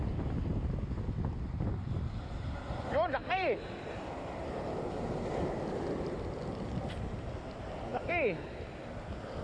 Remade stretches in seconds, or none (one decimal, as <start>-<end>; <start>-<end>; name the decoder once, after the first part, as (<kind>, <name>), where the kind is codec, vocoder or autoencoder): 3.2-4.6 (vocoder, BigVGAN v2)